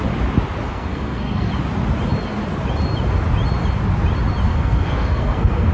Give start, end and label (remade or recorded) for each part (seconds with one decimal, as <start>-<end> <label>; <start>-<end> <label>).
0.0-0.7 recorded; 0.7-1.5 remade; 1.5-4.5 recorded; 4.5-5.7 remade